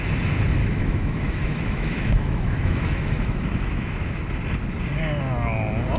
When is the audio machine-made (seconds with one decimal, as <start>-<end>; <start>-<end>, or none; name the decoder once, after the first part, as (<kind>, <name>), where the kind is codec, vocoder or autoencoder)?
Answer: 0.6-4.2 (autoencoder, DAC-VAE)